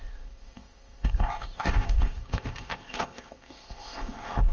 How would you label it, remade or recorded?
remade